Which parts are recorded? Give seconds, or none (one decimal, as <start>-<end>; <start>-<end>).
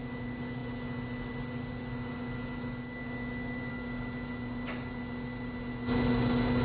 0.0-6.6